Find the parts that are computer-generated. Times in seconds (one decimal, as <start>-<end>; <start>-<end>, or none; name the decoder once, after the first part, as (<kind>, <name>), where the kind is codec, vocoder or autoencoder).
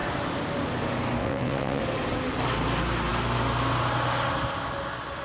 1.2-1.8 (vocoder, WaveNeXt)